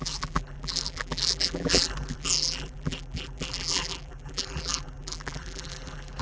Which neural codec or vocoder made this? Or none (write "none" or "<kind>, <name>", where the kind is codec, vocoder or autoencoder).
vocoder, BigVGAN v2